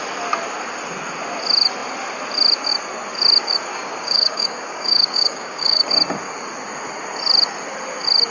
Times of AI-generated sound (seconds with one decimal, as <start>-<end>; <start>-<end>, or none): 3.7-5.9